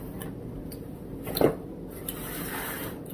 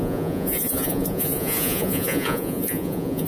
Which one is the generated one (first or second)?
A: second